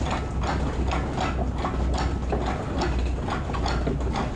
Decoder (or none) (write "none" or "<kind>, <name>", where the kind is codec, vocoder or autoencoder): none